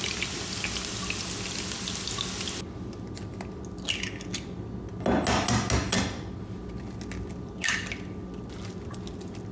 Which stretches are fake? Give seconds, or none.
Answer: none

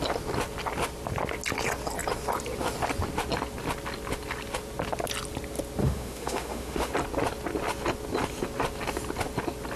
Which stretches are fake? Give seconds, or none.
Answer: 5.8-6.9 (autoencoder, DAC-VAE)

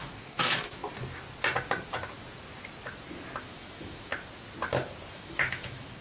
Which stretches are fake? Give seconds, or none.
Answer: 0.0-0.8 (autoencoder, DAC-VAE); 3.4-4.1; 5.1-6.0

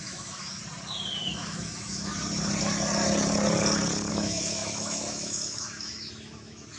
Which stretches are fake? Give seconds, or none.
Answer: 0.0-0.6 (autoencoder, DAC-VAE); 1.2-2.1; 4.1-6.8

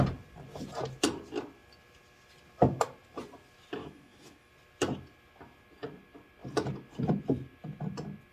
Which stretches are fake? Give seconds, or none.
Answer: 3.8-4.5 (autoencoder, DAC-VAE)

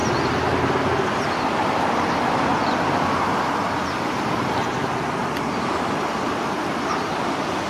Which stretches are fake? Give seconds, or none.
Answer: none

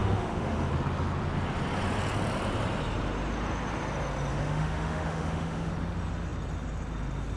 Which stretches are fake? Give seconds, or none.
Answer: 0.0-0.7 (autoencoder, DAC-VAE); 4.3-5.7

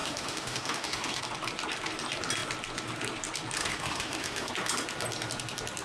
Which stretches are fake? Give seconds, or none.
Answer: 0.0-1.2 (autoencoder, DAC-VAE); 3.6-4.5